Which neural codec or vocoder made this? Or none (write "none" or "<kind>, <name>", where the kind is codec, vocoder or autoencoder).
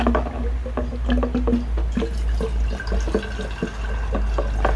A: none